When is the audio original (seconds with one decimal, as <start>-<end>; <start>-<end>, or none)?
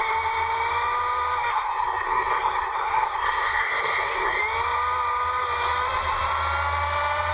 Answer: 0.0-1.5; 4.4-7.3